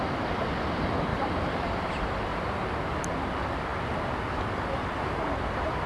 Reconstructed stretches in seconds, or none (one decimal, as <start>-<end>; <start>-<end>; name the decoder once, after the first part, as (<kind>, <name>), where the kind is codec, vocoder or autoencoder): 1.1-1.9 (vocoder, BigVGAN v2); 2.3-3.0